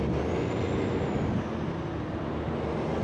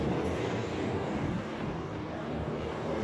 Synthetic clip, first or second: second